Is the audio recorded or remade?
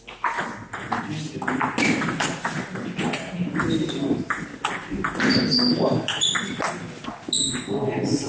recorded